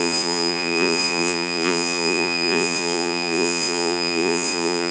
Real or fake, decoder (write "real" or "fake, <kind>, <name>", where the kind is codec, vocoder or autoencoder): fake, vocoder, Vocos